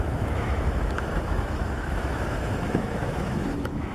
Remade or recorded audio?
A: remade